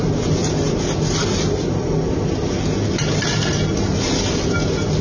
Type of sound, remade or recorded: recorded